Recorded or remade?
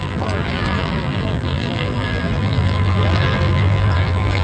remade